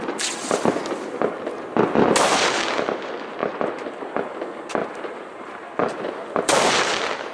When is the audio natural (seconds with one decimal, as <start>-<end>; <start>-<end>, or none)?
0.0-4.8; 6.1-7.3